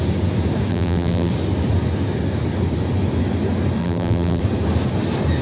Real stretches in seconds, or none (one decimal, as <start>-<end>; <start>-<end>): 0.0-0.7; 1.3-3.8; 4.4-5.4